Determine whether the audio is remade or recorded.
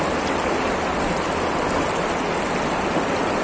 recorded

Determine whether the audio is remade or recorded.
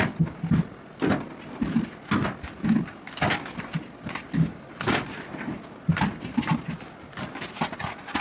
recorded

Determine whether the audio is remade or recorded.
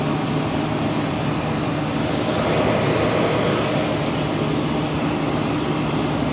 recorded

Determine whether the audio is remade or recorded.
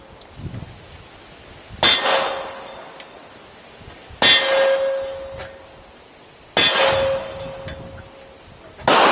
recorded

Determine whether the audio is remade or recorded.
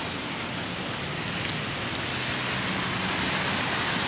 recorded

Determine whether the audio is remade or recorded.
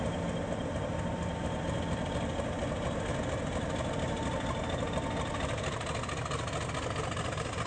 recorded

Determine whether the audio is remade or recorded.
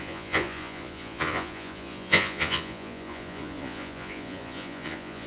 remade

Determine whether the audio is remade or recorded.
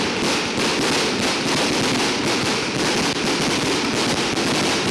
recorded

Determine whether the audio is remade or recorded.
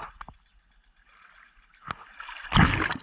recorded